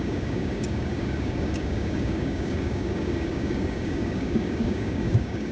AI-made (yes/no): yes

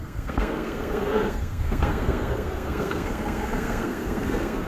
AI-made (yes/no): yes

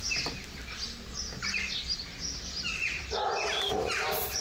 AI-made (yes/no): no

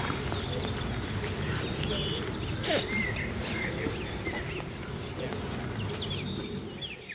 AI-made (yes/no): no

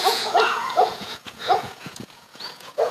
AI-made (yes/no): yes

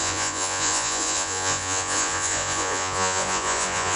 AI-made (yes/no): yes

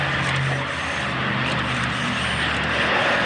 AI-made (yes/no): no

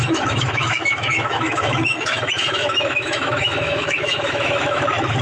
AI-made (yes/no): yes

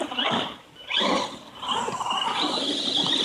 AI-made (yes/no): no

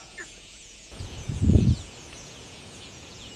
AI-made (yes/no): yes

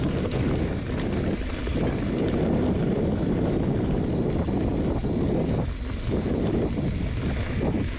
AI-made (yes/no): no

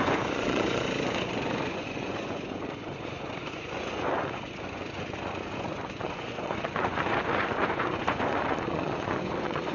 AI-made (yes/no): yes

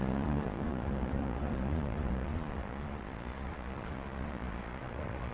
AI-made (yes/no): yes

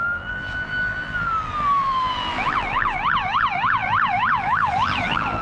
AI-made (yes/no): yes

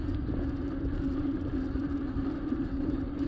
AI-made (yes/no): no